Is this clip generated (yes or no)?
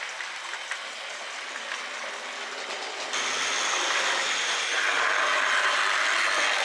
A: no